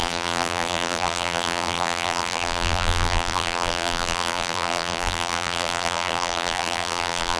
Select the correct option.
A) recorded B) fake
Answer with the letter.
B